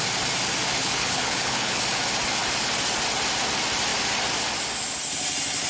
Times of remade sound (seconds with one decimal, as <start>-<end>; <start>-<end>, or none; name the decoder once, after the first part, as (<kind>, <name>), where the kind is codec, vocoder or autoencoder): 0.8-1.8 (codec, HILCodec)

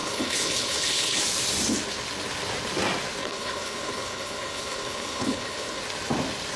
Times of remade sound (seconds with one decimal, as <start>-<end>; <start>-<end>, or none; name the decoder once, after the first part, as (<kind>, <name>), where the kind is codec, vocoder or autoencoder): 0.0-1.2 (codec, HILCodec); 3.2-5.8

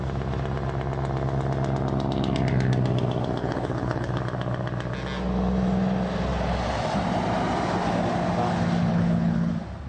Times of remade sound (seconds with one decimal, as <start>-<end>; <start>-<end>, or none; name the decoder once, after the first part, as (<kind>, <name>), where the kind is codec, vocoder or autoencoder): 3.4-4.2 (codec, HILCodec); 8.9-9.5

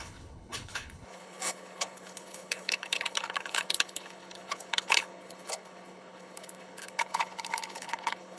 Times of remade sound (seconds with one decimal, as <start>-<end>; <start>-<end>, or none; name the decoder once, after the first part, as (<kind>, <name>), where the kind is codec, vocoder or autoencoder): 0.0-8.4 (codec, HILCodec)

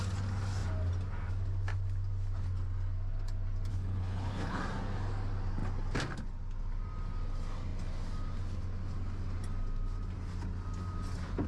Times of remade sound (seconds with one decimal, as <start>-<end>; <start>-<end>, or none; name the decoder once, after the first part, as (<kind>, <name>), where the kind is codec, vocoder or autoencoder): 3.7-4.6 (codec, HILCodec)

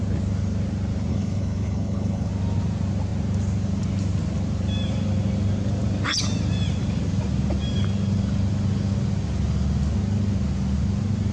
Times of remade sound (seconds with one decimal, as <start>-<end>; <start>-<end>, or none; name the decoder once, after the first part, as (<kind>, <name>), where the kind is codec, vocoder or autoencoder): 1.1-2.3 (codec, HILCodec)

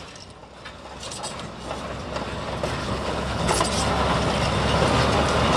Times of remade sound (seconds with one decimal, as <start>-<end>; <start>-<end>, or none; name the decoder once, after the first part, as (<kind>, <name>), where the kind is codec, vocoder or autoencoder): 2.8-3.6 (codec, HILCodec)